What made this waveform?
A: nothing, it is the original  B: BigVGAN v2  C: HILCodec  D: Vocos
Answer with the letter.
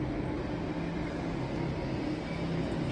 A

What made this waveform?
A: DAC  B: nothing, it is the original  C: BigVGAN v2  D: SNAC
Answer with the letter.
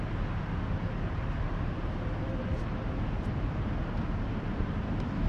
B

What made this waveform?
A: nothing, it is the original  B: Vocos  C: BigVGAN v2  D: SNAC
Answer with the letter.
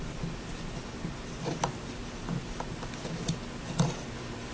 A